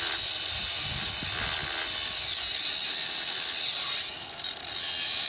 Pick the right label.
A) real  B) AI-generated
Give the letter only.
A